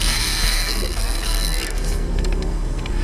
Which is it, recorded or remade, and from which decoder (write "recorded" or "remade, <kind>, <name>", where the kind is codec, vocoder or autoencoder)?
remade, codec, SNAC